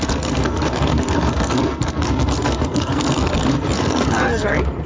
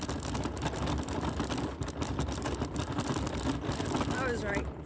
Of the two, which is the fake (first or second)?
first